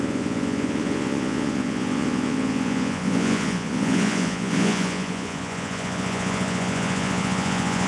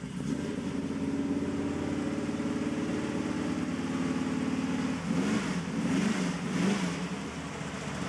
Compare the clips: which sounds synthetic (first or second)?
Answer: first